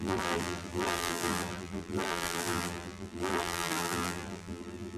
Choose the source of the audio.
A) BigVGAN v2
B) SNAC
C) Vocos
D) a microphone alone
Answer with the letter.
A